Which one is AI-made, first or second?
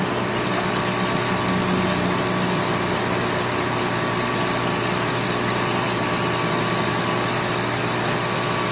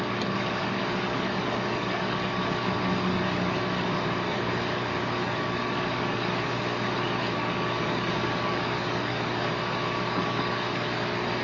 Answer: second